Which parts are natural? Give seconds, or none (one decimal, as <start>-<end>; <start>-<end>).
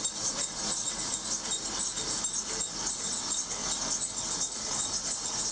1.2-2.9; 3.6-4.4